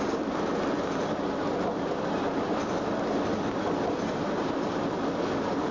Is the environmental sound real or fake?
real